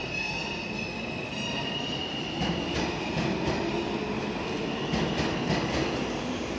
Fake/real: real